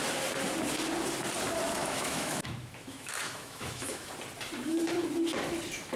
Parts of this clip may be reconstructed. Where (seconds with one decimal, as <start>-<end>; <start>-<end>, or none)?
1.8-4.1